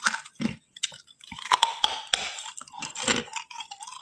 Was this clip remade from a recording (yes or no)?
no